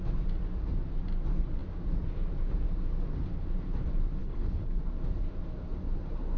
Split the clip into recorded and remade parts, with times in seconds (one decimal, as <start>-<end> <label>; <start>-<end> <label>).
0.0-4.2 recorded; 4.2-4.8 remade; 4.8-6.4 recorded